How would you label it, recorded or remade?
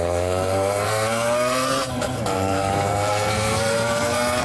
remade